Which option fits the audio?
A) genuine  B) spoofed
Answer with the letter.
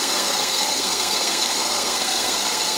B